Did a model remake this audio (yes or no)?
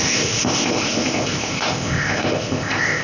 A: yes